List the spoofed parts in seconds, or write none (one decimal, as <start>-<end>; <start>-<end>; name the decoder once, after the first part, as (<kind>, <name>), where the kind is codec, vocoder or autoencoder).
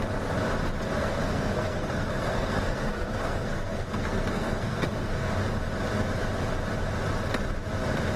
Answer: 1.0-5.3 (codec, SNAC)